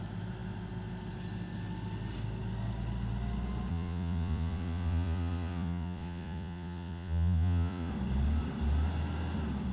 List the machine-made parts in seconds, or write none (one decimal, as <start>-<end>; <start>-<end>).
3.7-7.9